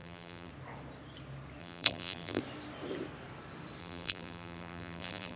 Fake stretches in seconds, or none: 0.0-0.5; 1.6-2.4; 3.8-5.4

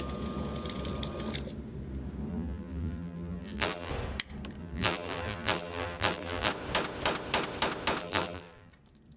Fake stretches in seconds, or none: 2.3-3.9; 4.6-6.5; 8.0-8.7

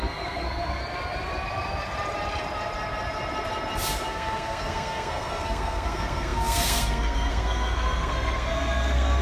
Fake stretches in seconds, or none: 0.0-0.8; 4.1-9.2

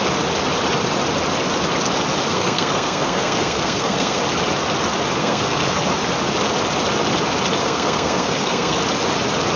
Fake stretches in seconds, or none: 2.3-4.2; 5.2-5.8; 7.6-8.8

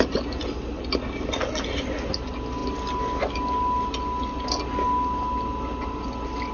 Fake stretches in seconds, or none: none